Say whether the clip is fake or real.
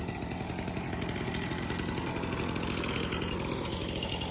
real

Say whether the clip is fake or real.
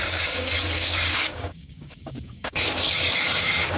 fake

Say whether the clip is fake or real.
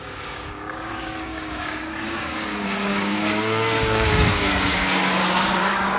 fake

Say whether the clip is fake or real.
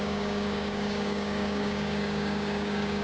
fake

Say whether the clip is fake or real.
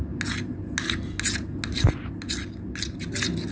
real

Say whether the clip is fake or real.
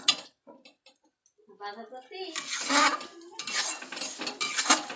real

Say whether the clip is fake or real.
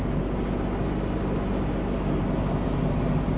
real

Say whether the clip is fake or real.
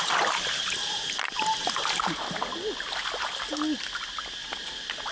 real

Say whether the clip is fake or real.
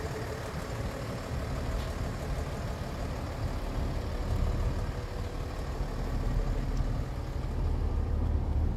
real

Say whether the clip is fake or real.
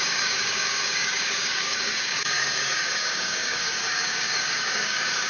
fake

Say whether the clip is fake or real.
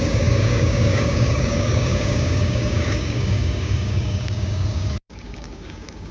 fake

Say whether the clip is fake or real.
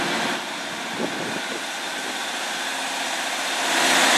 real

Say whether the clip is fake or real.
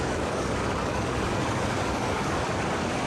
fake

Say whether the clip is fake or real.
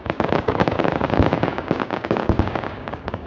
fake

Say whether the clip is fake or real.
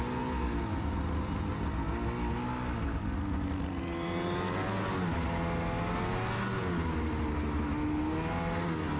real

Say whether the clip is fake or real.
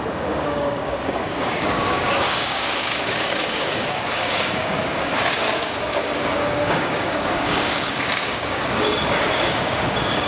fake